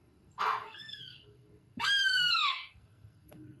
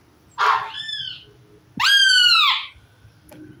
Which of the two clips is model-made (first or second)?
first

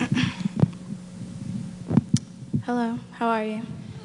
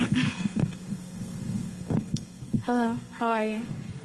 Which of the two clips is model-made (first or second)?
second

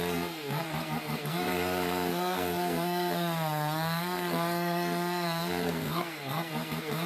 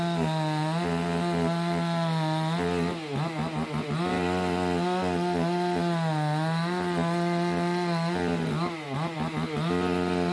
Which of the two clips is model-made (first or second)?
first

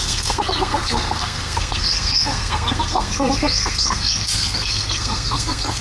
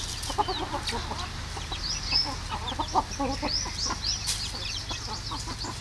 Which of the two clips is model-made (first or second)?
first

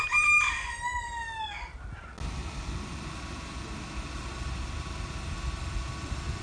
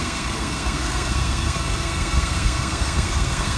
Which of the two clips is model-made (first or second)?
second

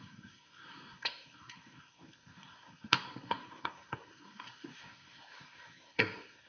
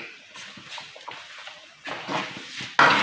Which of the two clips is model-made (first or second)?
first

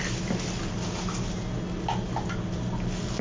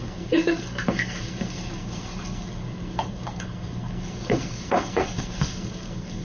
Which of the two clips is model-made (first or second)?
second